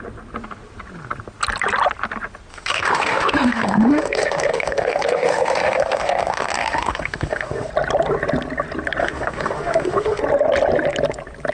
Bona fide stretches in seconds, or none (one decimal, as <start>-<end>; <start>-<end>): 0.0-2.5; 7.7-9.0; 10.2-11.5